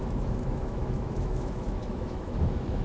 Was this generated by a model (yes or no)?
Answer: yes